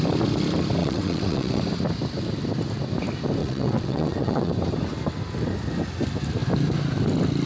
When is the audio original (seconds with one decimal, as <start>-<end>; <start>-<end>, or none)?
0.0-0.8; 1.6-3.4; 4.5-7.5